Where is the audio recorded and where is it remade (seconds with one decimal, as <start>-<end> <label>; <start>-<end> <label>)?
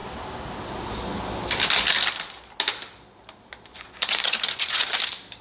0.0-3.7 recorded; 3.7-5.0 remade; 5.0-5.4 recorded